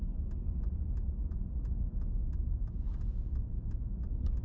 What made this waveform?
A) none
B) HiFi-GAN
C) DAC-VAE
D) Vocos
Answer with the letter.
A